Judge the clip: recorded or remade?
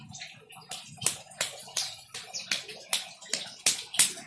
recorded